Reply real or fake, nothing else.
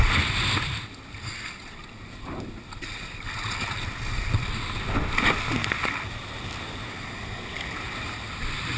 real